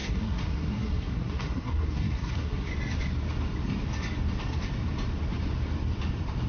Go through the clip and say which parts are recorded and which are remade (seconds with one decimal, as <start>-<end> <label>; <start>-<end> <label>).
0.0-2.7 remade; 2.7-6.5 recorded